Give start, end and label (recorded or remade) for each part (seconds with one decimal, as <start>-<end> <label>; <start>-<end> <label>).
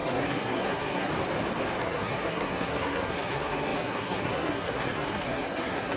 0.0-1.1 remade; 1.1-1.8 recorded; 1.8-6.0 remade